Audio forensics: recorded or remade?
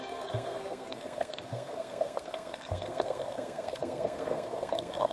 remade